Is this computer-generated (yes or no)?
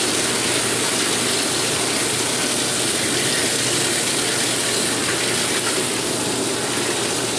no